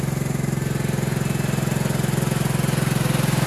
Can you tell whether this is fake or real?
real